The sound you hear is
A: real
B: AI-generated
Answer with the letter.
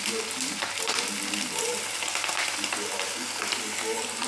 A